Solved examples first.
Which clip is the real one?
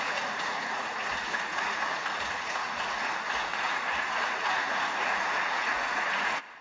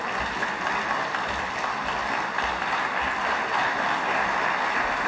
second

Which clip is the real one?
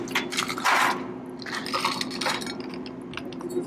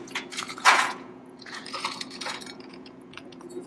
first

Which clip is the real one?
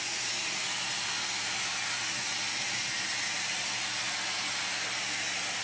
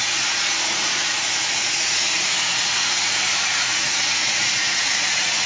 first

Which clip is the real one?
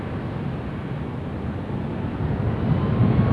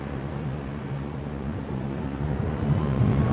first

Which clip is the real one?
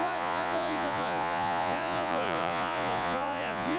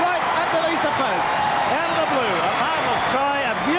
second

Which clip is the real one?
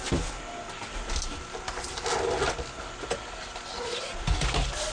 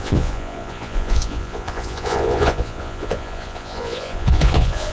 first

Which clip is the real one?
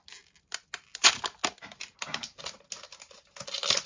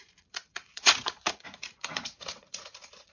first